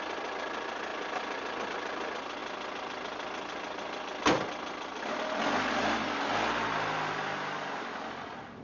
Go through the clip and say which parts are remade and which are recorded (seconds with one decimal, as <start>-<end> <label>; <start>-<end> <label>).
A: 0.0-8.6 recorded